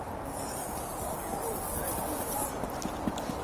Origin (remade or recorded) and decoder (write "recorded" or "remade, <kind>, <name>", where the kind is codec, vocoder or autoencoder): recorded